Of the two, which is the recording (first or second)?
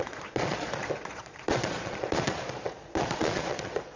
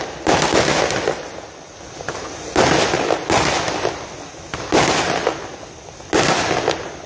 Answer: second